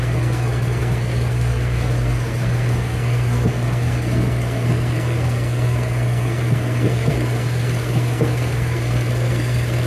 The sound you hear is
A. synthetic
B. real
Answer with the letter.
A